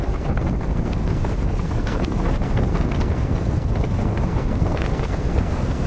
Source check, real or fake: fake